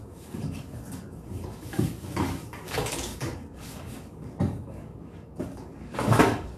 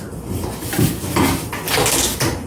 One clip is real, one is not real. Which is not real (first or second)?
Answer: first